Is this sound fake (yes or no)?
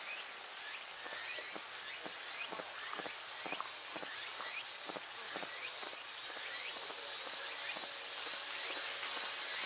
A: no